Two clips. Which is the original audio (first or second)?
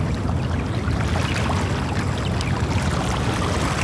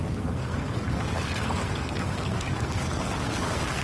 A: first